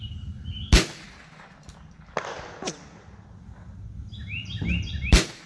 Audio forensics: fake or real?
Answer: real